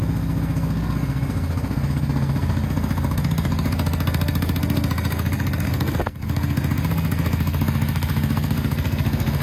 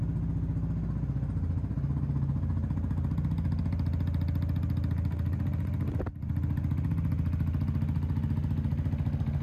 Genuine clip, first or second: second